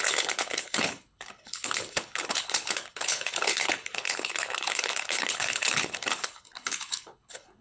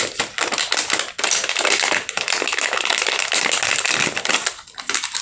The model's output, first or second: first